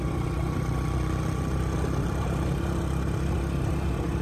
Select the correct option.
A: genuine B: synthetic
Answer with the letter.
A